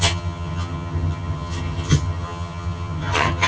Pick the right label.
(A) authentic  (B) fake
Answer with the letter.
B